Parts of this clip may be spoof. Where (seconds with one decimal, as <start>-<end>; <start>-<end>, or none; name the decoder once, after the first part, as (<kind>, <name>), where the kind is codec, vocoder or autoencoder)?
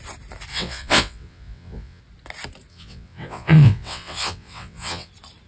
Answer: 0.5-2.0 (vocoder, WaveNeXt); 2.7-5.1